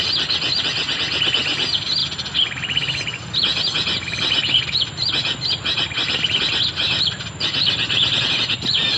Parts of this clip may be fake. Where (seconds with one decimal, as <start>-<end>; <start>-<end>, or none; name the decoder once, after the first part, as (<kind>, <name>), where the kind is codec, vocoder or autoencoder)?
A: none